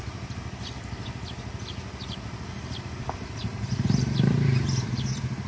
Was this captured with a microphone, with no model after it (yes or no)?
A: yes